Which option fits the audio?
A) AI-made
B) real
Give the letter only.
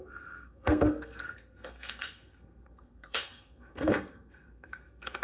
A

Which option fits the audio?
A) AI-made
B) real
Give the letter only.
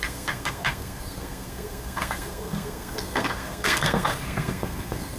A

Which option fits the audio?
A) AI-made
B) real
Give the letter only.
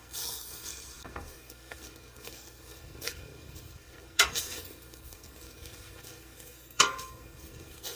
A